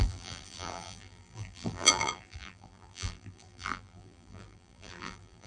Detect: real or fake fake